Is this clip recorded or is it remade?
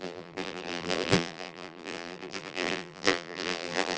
remade